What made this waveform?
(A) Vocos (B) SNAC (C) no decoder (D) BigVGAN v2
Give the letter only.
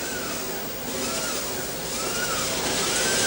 C